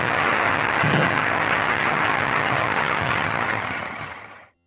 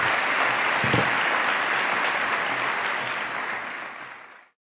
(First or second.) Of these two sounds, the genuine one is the second